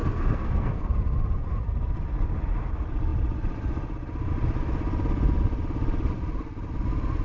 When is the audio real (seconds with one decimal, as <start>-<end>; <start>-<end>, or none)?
0.9-7.2

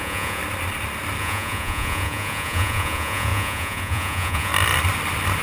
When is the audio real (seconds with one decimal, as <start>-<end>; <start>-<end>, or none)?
0.4-1.2; 4.5-5.4